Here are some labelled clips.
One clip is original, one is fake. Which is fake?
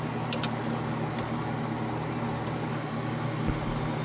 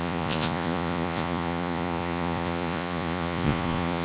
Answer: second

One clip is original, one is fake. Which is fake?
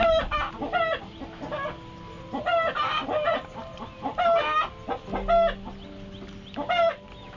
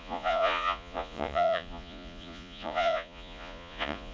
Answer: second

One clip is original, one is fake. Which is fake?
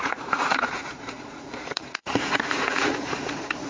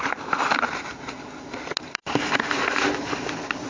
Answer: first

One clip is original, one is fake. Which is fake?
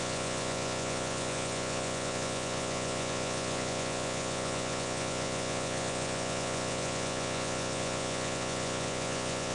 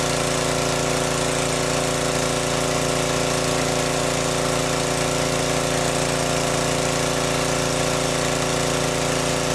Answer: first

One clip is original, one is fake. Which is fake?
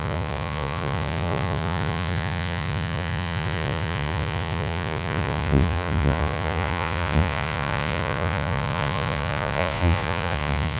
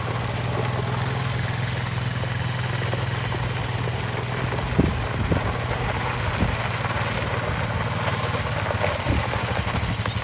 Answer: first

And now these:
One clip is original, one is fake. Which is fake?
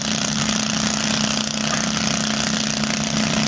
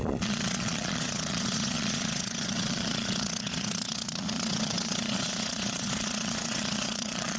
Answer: second